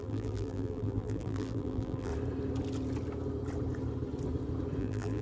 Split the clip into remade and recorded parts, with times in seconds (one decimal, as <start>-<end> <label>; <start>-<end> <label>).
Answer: 0.0-2.1 remade; 2.1-4.8 recorded; 4.8-5.2 remade